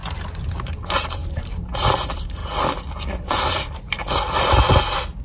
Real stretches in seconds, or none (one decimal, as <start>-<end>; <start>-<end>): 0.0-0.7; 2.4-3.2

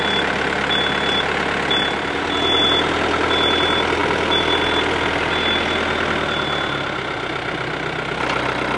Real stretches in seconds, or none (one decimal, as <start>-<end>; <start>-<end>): 0.0-8.8

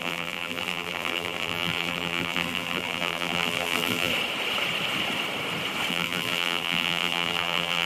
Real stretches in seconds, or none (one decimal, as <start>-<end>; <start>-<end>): 4.1-5.9